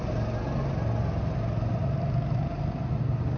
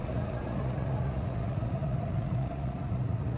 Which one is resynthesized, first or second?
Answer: second